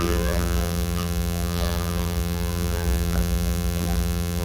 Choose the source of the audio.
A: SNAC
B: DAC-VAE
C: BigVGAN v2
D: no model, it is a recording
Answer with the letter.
C